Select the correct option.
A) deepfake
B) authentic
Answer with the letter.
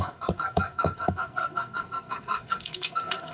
A